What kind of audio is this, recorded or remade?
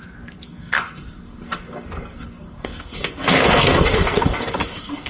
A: remade